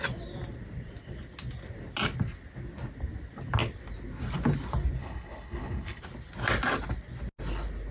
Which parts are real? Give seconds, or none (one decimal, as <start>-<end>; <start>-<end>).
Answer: 0.0-5.0; 6.0-7.9